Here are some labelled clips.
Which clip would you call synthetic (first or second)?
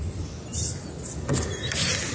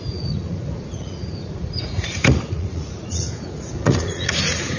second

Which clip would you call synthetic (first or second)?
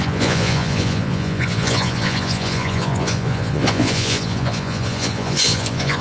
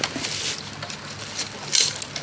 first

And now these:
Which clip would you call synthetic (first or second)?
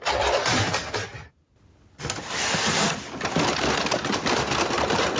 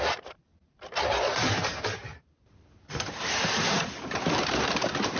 second